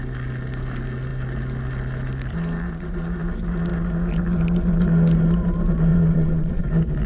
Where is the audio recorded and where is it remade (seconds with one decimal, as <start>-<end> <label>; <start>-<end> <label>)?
0.0-5.9 recorded; 5.9-6.6 remade; 6.6-7.1 recorded